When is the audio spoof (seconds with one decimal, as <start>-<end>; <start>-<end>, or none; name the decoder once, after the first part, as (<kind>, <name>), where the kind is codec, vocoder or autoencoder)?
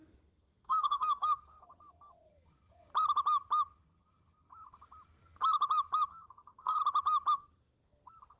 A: 0.0-2.3 (codec, SNAC); 6.1-6.8; 7.3-8.4